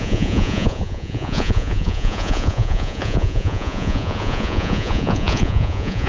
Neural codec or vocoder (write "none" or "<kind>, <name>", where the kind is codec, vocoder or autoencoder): vocoder, Vocos